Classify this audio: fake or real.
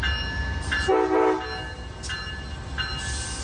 real